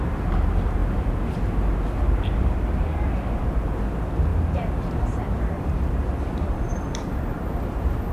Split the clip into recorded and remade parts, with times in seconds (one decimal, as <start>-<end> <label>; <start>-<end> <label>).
0.0-4.3 recorded; 4.3-7.5 remade; 7.5-8.1 recorded